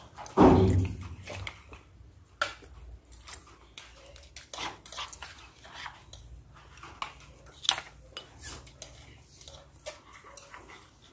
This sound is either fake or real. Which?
real